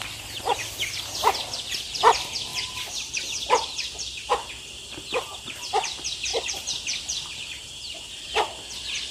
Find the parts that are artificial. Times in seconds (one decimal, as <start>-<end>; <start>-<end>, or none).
2.5-4.5; 6.3-9.1